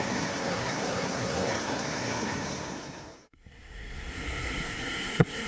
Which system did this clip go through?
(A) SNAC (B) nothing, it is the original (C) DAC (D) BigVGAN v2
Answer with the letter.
A